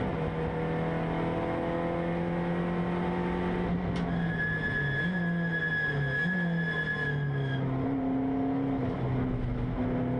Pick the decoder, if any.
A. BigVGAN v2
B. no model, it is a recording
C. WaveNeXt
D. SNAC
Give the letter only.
B